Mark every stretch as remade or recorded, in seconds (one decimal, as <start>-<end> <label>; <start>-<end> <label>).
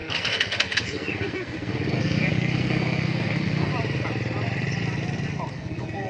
0.0-3.7 remade; 3.7-5.5 recorded; 5.5-6.1 remade